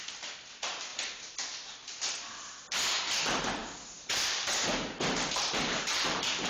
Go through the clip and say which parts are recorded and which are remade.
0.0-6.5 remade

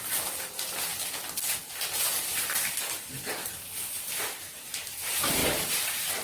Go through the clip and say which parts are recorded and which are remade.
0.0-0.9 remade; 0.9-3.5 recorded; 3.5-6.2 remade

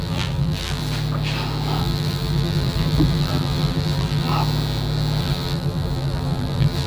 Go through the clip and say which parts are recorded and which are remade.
0.0-0.8 remade; 0.8-1.8 recorded; 1.8-4.3 remade; 4.3-5.2 recorded; 5.2-6.9 remade